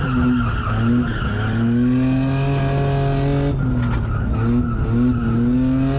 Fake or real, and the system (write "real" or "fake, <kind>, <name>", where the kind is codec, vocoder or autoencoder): real